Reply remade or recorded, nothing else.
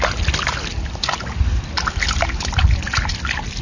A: recorded